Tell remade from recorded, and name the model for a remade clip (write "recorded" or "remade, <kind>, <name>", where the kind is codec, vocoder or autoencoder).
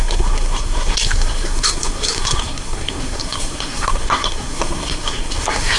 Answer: remade, codec, SNAC